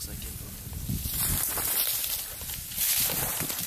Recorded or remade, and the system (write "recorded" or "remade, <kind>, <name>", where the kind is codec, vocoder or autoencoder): remade, vocoder, BigVGAN v2